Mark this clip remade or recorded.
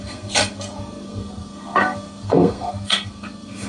remade